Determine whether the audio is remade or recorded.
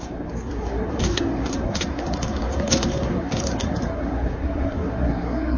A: remade